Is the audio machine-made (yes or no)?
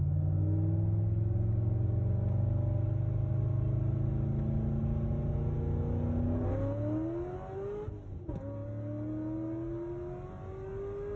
no